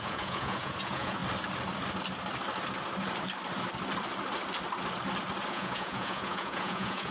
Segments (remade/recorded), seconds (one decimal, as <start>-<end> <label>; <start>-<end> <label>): 0.0-1.2 remade; 1.2-5.5 recorded; 5.5-7.1 remade